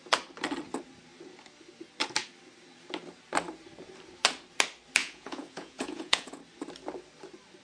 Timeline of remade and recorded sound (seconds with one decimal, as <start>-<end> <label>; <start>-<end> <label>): 0.0-5.0 recorded; 5.0-6.4 remade; 6.4-7.6 recorded